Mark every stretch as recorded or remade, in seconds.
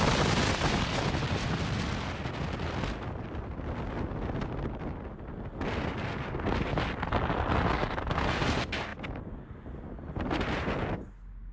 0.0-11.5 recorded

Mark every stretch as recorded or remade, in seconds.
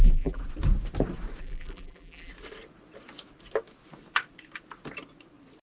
0.0-0.4 remade; 0.4-1.4 recorded; 1.4-2.3 remade; 2.3-5.7 recorded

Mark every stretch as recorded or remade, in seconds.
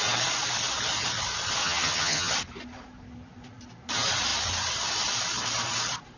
0.0-1.6 recorded; 1.6-2.3 remade; 2.3-6.2 recorded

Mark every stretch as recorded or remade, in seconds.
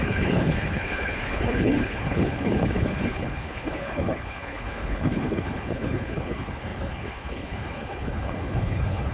0.0-9.1 remade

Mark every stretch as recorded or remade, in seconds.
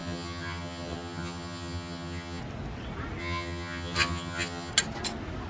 0.0-2.4 remade; 2.4-3.2 recorded; 3.2-4.7 remade; 4.7-5.5 recorded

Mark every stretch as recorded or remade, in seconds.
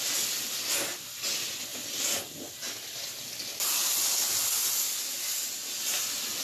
0.0-4.6 remade; 4.6-6.4 recorded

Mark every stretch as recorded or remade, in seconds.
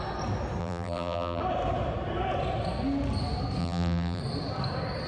0.0-0.6 recorded; 0.6-1.4 remade; 1.4-3.6 recorded; 3.6-4.2 remade; 4.2-5.1 recorded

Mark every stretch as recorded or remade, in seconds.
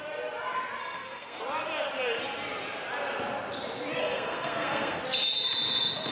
0.0-0.8 recorded; 0.8-1.4 remade; 1.4-4.0 recorded; 4.0-5.0 remade; 5.0-6.1 recorded